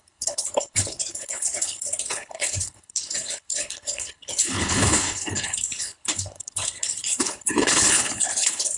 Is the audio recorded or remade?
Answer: remade